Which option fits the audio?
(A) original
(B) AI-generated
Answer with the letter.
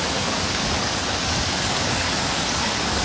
B